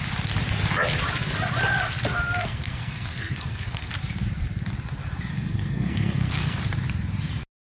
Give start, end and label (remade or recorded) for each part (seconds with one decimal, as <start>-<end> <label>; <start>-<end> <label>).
0.0-2.4 recorded; 2.4-3.9 remade; 3.9-5.3 recorded; 5.3-6.6 remade; 6.6-7.7 recorded